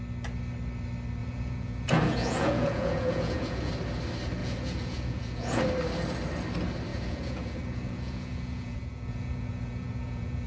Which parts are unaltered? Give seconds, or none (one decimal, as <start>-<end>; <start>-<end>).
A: 0.0-1.2; 3.7-4.4; 5.6-6.9

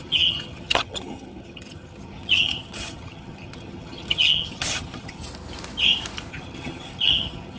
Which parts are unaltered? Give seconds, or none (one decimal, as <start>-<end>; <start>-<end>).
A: 5.2-6.3

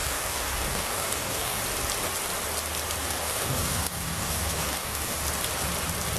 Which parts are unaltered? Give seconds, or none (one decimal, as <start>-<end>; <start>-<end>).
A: 1.6-3.0; 5.2-6.2

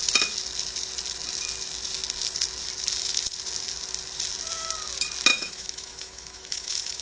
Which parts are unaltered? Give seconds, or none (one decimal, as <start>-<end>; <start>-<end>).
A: 0.0-5.3

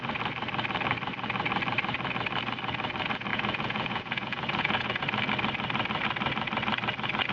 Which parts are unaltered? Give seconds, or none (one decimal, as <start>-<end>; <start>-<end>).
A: 0.0-3.3; 5.0-7.3

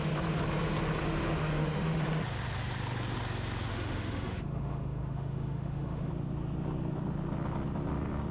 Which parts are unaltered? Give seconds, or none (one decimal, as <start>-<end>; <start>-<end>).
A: 0.0-1.0; 2.0-3.7; 6.1-8.3

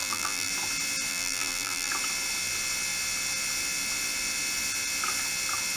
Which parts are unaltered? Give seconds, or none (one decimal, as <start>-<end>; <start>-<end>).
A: 0.5-1.1; 1.9-5.8